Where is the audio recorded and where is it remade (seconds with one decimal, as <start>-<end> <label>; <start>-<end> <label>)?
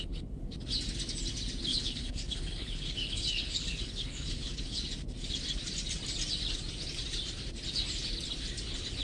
0.0-0.5 remade; 0.5-1.7 recorded; 1.7-4.8 remade; 4.8-9.0 recorded